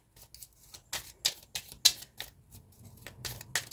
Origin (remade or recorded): recorded